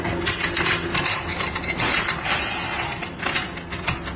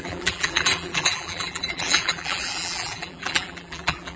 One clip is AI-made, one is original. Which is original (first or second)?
first